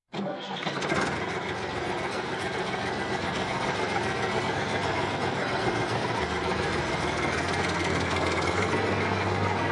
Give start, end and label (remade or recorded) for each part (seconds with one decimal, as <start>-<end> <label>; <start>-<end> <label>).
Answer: 0.0-9.7 remade